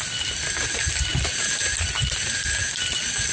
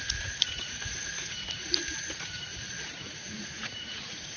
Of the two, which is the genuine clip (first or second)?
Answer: first